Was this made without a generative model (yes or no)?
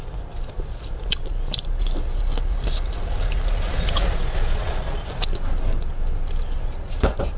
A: yes